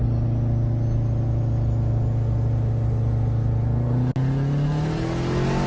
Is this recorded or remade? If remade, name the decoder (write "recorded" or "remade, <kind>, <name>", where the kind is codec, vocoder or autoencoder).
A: recorded